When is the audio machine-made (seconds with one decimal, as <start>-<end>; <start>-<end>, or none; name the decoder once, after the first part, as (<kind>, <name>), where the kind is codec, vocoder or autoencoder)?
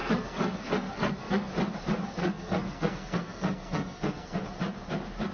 0.0-1.5 (codec, SNAC); 2.2-4.4